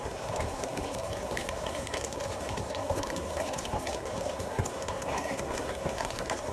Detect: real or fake fake